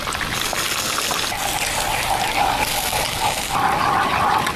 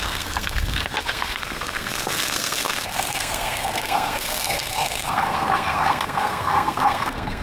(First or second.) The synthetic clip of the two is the second